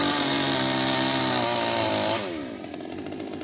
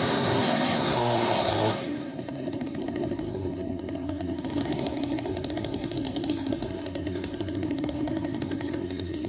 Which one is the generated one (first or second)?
second